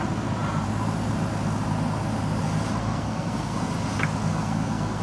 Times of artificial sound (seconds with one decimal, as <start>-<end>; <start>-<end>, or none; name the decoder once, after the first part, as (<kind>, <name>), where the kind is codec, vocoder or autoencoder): 2.8-3.7 (codec, SNAC); 4.3-5.0